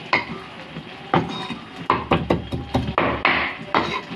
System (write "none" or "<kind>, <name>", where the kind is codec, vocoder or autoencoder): none